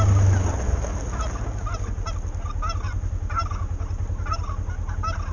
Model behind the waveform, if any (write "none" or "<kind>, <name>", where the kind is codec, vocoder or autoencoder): none